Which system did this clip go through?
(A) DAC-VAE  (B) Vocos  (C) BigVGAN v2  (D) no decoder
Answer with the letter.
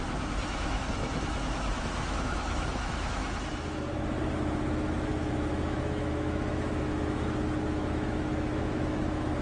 A